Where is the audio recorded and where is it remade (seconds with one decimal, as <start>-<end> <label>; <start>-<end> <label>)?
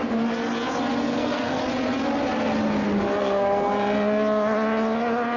0.0-1.0 recorded; 1.0-1.6 remade; 1.6-3.2 recorded; 3.2-3.7 remade; 3.7-5.4 recorded